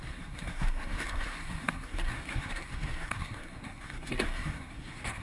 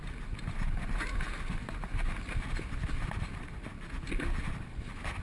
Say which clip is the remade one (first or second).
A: first